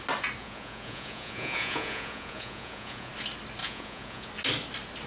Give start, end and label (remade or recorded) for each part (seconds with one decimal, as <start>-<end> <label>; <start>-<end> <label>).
0.0-0.4 recorded; 0.4-3.1 remade; 3.1-3.6 recorded; 3.6-4.3 remade; 4.3-5.1 recorded